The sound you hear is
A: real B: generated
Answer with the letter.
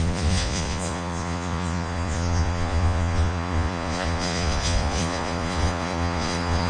B